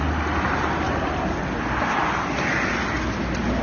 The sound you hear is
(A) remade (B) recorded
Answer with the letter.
B